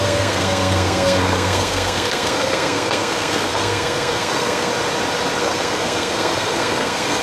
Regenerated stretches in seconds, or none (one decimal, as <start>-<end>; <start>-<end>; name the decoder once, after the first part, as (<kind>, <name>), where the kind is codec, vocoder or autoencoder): 0.0-4.7 (codec, SNAC); 5.4-7.2